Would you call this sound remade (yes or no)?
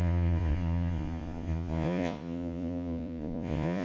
yes